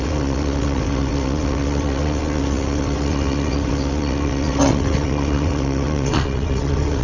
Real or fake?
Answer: fake